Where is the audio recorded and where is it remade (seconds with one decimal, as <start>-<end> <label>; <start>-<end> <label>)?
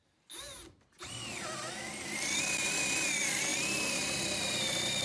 0.0-5.0 recorded